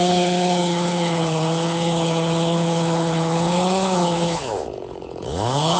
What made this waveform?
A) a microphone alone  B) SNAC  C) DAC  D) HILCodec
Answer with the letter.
D